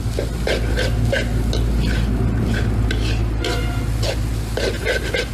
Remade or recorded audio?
recorded